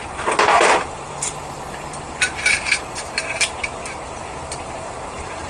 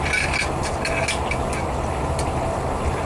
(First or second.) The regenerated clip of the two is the first